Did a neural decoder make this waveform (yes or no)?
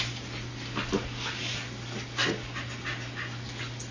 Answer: no